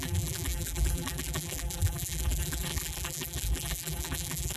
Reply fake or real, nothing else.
fake